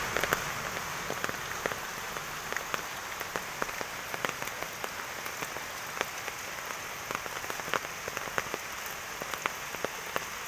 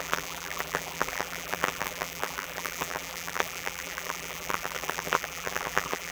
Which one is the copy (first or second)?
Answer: second